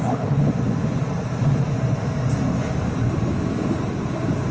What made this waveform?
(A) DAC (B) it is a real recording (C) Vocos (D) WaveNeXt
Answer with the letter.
B